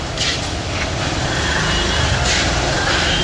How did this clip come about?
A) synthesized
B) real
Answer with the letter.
B